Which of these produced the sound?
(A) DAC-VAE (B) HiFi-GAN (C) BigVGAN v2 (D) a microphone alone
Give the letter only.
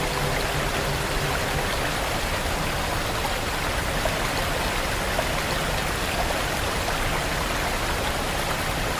D